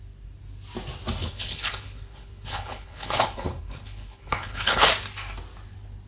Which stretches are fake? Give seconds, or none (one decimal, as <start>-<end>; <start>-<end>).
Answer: 1.2-4.9